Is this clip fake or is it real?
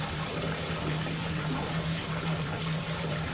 fake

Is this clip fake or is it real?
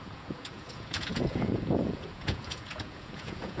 fake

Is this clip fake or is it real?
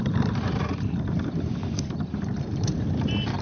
fake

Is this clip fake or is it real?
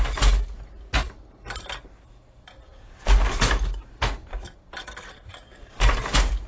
real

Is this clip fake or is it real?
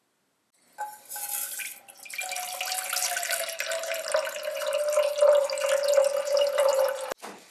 real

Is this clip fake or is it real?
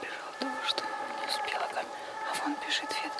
real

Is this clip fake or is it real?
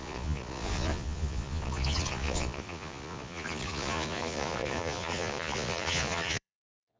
fake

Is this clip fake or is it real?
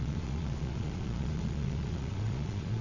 fake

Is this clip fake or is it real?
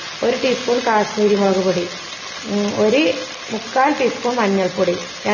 real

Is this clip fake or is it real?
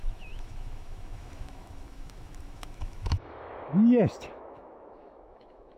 fake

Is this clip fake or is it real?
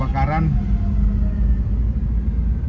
real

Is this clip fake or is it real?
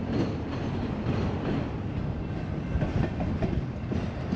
real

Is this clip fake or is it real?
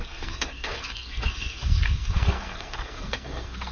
fake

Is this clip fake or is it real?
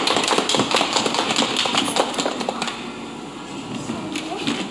real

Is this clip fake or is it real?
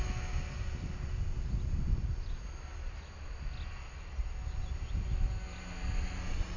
real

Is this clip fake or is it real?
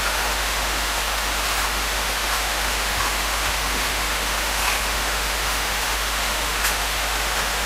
fake